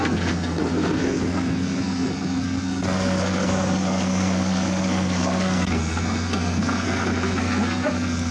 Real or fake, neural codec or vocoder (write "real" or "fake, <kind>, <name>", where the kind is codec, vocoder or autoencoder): fake, codec, SNAC